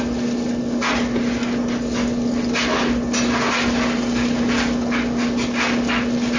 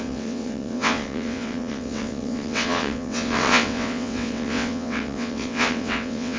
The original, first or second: first